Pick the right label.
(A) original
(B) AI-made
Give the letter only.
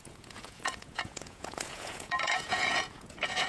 B